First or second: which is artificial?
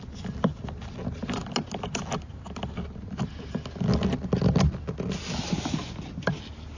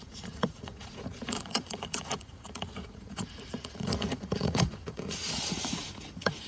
second